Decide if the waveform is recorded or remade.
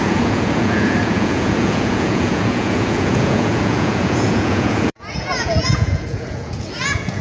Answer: remade